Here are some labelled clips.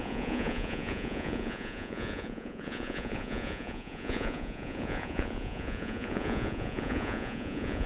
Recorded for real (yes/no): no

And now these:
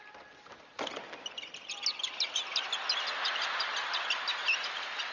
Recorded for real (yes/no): yes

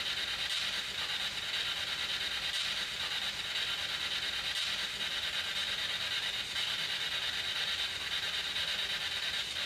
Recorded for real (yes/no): yes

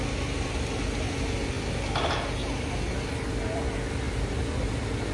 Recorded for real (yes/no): yes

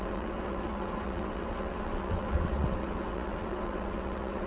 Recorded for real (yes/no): no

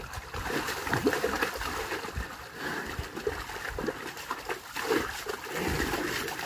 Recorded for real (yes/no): yes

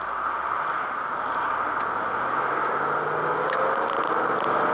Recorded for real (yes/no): yes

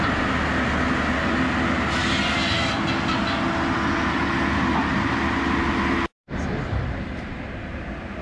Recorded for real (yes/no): yes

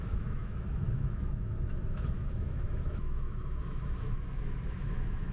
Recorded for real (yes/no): no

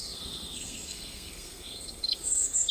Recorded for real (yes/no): no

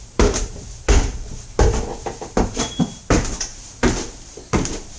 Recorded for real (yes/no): no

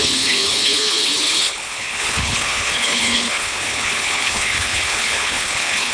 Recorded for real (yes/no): no